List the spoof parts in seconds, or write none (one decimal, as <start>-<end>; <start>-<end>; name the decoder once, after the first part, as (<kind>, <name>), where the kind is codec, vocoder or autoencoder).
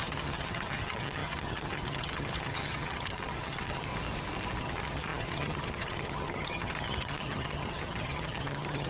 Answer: 0.0-3.9 (vocoder, HiFi-GAN); 4.6-8.9